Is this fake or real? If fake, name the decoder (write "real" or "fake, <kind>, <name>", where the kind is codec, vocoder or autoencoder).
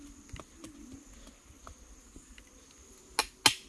real